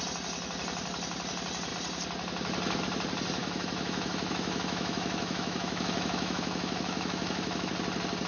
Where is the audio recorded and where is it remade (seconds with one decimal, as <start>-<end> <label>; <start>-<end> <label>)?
0.0-3.4 recorded; 3.4-7.7 remade; 7.7-8.3 recorded